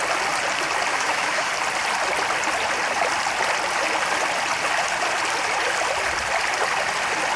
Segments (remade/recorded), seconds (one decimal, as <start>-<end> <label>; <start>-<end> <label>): 0.0-0.9 recorded; 0.9-1.5 remade; 1.5-7.4 recorded